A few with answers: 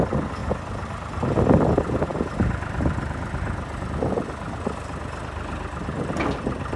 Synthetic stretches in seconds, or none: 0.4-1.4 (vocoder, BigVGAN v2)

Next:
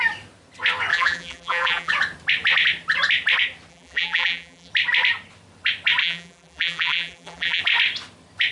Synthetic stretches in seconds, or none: 0.9-1.9 (vocoder, BigVGAN v2); 3.7-4.7; 6.0-7.6

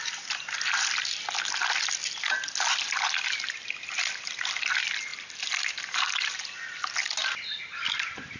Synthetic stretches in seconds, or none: 5.1-6.4 (vocoder, BigVGAN v2); 7.0-7.6

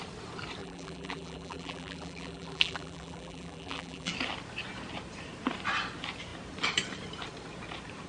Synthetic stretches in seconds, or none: 0.6-4.1 (vocoder, BigVGAN v2)

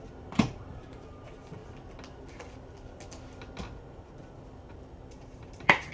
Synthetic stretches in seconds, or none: 0.0-1.6 (vocoder, BigVGAN v2); 5.1-5.9